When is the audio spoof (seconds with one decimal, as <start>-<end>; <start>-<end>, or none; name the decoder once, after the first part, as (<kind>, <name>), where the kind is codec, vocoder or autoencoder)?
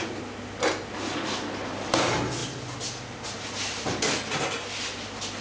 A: none